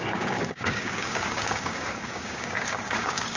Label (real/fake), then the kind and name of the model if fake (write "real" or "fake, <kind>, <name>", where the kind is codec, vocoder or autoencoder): fake, codec, DAC